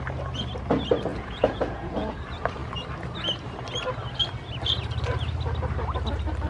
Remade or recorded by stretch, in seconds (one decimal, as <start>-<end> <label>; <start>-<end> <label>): 0.0-1.1 recorded; 1.1-2.2 remade; 2.2-6.5 recorded